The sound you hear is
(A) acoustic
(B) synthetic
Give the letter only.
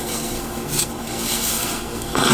B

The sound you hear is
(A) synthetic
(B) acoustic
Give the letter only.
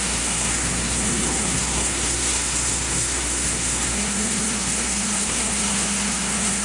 A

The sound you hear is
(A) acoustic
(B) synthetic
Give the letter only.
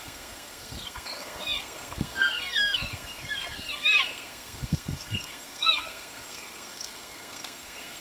B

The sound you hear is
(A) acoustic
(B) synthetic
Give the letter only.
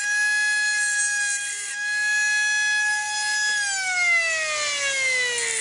A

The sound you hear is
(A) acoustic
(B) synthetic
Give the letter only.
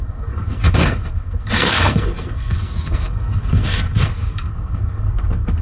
B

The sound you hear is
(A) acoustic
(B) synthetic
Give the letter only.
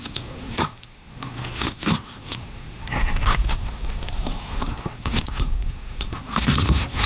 B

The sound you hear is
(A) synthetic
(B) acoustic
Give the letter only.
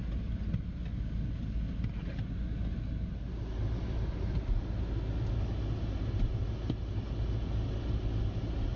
B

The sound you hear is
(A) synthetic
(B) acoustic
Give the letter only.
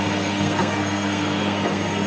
A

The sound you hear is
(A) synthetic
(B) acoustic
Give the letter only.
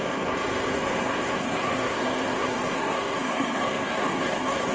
A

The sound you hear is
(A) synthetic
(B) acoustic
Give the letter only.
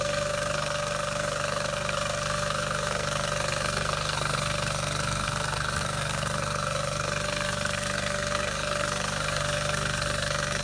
A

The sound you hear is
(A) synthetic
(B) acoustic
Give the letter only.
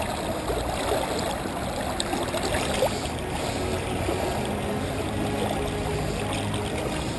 B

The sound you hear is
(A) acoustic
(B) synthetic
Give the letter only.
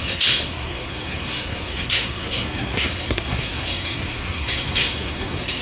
B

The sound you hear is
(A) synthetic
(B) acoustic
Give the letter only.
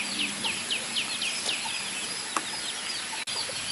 B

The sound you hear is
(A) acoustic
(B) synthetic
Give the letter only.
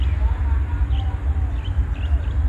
A